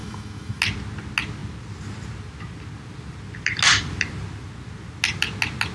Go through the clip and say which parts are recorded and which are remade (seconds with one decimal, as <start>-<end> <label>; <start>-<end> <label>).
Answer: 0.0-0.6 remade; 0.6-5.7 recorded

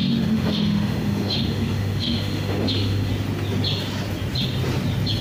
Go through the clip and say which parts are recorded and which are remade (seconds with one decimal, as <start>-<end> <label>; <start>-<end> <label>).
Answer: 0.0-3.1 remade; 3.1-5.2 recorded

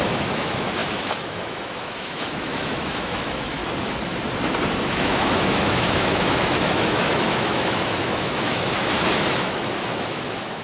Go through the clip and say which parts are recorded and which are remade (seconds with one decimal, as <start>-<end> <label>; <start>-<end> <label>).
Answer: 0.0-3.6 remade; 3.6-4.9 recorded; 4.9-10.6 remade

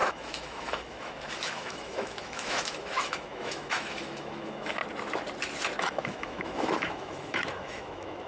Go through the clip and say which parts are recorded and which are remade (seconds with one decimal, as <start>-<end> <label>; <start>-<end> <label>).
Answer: 0.0-4.8 remade; 4.8-5.8 recorded; 5.8-8.3 remade

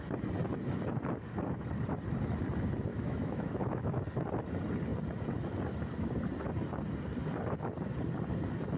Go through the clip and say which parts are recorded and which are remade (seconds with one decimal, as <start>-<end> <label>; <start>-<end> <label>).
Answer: 0.0-2.9 recorded; 2.9-4.0 remade; 4.0-8.8 recorded